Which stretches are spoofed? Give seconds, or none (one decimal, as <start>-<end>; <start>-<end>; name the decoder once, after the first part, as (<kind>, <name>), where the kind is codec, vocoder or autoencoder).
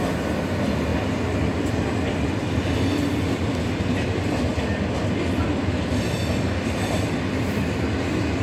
none